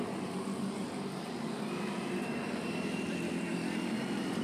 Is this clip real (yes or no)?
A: no